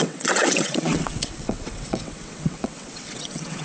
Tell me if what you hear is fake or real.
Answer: fake